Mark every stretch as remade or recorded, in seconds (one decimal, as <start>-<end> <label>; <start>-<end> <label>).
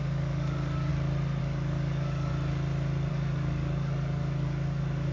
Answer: 0.0-0.9 remade; 0.9-1.4 recorded; 1.4-2.3 remade; 2.3-3.1 recorded; 3.1-5.1 remade